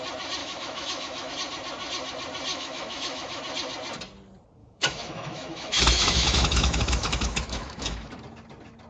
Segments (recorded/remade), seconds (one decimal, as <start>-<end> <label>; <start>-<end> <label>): 0.0-0.4 recorded; 0.4-1.3 remade; 1.3-2.5 recorded; 2.5-3.4 remade; 3.4-4.6 recorded; 4.6-8.1 remade; 8.1-8.9 recorded